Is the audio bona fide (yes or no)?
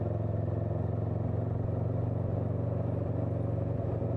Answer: yes